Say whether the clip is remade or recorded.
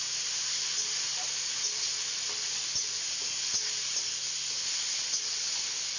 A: recorded